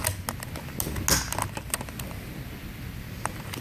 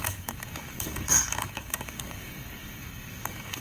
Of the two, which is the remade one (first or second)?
second